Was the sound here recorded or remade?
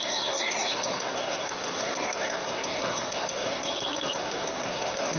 remade